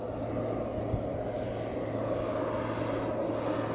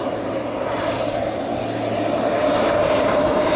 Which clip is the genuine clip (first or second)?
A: first